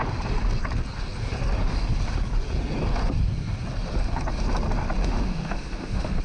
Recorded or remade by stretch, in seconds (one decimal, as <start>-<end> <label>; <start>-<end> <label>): 0.0-5.0 recorded; 5.0-6.2 remade